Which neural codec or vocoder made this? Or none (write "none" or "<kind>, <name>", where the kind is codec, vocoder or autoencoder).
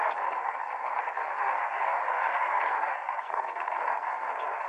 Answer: codec, SNAC